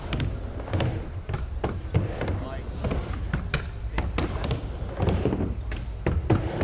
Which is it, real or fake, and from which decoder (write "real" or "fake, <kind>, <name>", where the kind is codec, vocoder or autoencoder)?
real